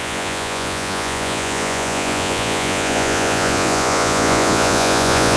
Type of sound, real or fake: fake